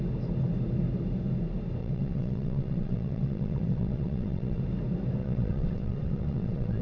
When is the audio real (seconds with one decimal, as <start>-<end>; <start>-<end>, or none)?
0.0-1.8; 4.6-5.2